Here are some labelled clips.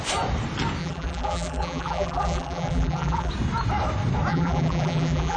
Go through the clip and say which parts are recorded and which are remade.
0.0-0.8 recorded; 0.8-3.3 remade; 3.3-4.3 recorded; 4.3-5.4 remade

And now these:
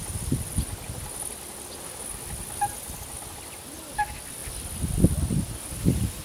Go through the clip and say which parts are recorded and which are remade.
0.0-6.2 recorded

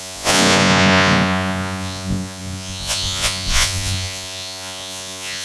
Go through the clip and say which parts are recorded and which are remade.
0.0-5.4 remade

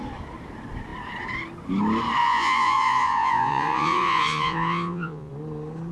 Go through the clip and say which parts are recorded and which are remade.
0.0-2.2 recorded; 2.2-5.3 remade; 5.3-5.9 recorded

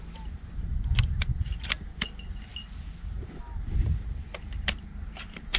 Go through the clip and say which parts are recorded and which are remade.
0.0-5.6 recorded

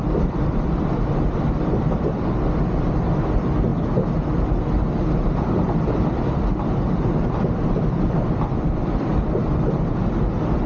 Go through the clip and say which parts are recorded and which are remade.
0.0-9.1 remade; 9.1-10.7 recorded

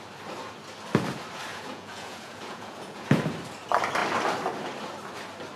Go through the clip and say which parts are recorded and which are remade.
0.0-1.5 recorded; 1.5-3.2 remade; 3.2-5.6 recorded